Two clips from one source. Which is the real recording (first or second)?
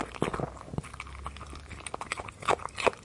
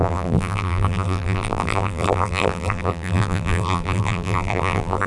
first